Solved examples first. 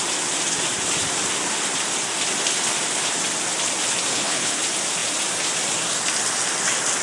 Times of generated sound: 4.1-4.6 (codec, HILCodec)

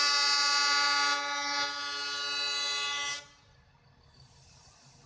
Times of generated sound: none

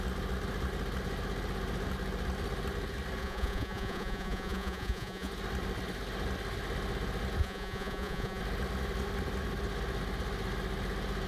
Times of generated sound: 3.2-5.3 (vocoder, Vocos); 7.4-8.4

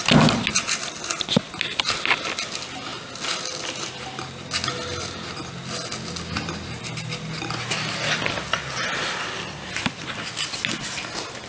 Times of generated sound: none

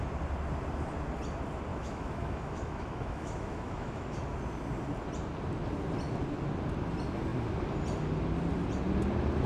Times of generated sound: 1.7-4.4 (autoencoder, DAC-VAE)

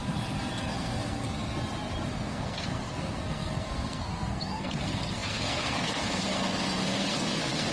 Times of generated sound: 0.6-1.5 (codec, SNAC); 2.1-7.7

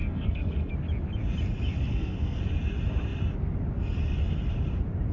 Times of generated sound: 0.0-0.7 (codec, SNAC); 1.9-2.4